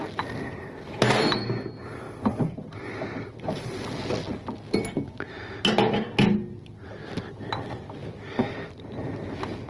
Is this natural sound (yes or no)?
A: yes